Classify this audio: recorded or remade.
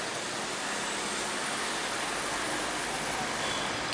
recorded